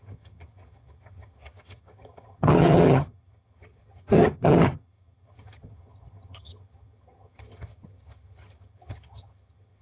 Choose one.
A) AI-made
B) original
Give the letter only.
A